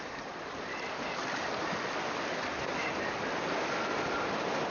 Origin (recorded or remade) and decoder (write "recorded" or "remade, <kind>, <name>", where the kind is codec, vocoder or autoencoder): recorded